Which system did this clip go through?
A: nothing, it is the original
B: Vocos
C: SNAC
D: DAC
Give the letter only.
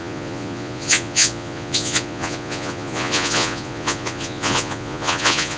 B